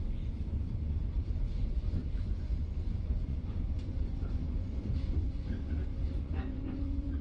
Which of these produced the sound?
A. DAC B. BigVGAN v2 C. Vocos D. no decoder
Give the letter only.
C